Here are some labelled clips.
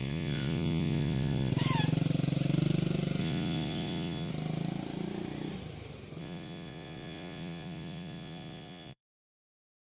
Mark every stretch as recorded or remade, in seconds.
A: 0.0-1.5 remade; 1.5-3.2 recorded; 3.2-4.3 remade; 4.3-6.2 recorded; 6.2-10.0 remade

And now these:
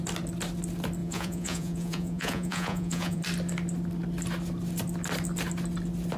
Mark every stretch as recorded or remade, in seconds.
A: 0.0-1.0 recorded; 1.0-3.2 remade; 3.2-6.2 recorded

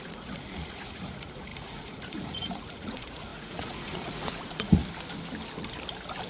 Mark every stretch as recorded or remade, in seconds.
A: 0.0-4.8 remade; 4.8-6.3 recorded

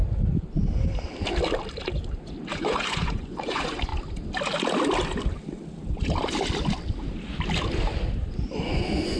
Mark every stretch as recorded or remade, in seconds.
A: 0.0-2.5 recorded; 2.5-3.9 remade; 3.9-8.6 recorded; 8.6-9.2 remade

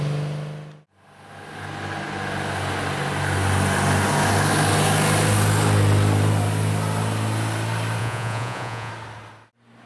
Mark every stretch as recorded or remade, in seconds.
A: 0.0-8.0 recorded; 8.0-8.9 remade; 8.9-9.9 recorded

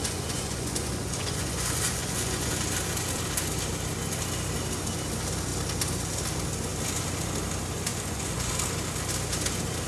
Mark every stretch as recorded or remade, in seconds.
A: 0.0-2.5 remade; 2.5-7.9 recorded; 7.9-8.5 remade; 8.5-9.9 recorded

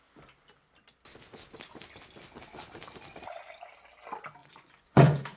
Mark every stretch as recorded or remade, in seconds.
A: 0.0-4.4 recorded; 4.4-5.4 remade